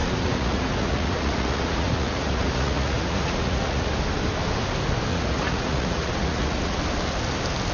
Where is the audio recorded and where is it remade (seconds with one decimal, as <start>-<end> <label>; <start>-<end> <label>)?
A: 0.0-3.9 remade; 3.9-5.1 recorded; 5.1-6.8 remade; 6.8-7.7 recorded